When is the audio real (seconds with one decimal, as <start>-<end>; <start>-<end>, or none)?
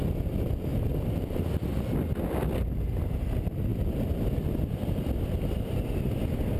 0.0-0.7; 2.2-3.7; 5.8-6.6